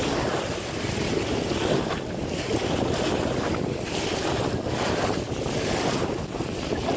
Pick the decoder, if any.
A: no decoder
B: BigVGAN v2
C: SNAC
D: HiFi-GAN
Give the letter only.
A